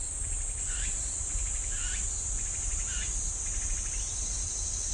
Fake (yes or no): no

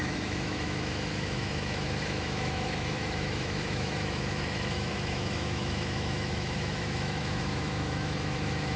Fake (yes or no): yes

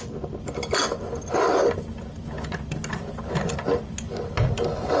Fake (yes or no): no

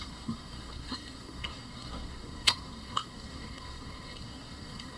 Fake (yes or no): yes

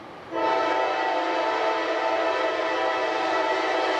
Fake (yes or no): no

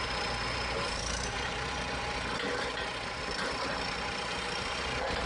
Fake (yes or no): yes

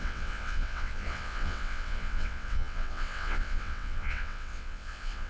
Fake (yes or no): yes